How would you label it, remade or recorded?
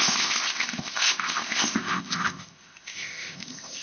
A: remade